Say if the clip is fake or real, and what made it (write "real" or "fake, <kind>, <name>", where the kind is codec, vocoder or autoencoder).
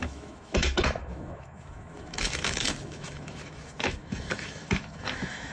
fake, autoencoder, DAC-VAE